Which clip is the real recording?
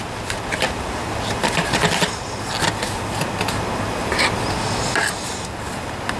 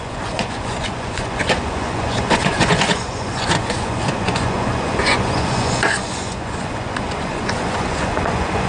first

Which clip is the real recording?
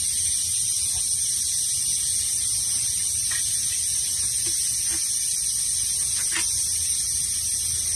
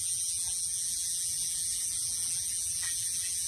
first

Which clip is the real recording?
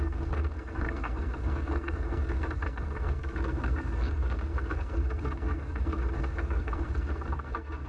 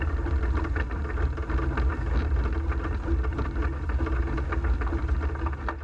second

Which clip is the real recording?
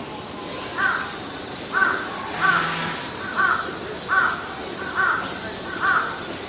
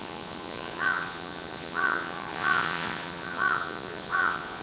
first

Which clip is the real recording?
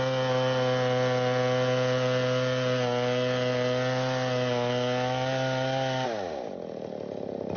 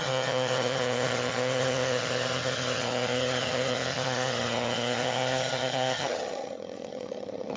first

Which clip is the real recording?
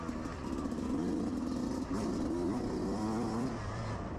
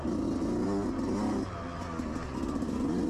second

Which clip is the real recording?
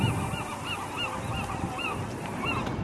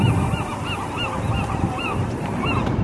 first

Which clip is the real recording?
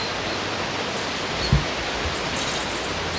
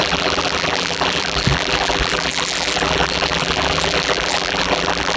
first